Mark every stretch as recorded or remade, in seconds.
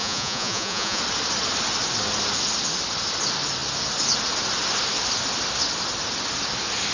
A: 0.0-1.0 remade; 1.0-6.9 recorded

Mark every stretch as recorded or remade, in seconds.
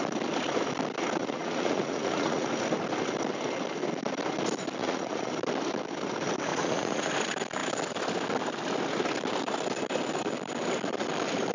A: 0.0-1.2 recorded; 1.2-2.5 remade; 2.5-4.8 recorded; 4.8-5.3 remade; 5.3-6.5 recorded; 6.5-7.1 remade; 7.1-11.5 recorded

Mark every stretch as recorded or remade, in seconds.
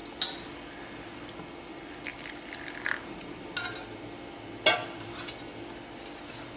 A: 0.0-6.6 recorded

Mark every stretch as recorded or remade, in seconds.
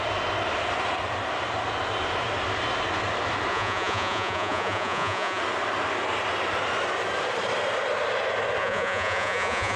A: 0.0-3.5 recorded; 3.5-5.4 remade; 5.4-8.6 recorded; 8.6-9.8 remade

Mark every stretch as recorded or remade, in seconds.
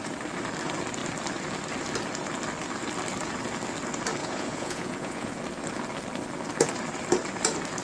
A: 0.0-4.2 recorded; 4.2-5.4 remade; 5.4-7.8 recorded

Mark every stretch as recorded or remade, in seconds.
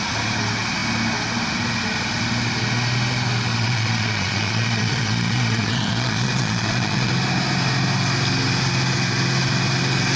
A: 0.0-3.5 recorded; 3.5-7.1 remade; 7.1-10.2 recorded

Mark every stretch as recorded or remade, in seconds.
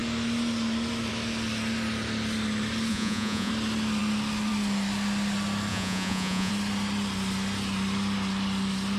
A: 0.0-2.9 recorded; 2.9-3.5 remade; 3.5-5.7 recorded; 5.7-6.5 remade; 6.5-9.0 recorded